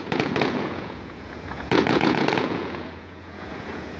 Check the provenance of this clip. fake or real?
fake